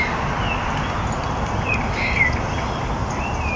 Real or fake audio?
real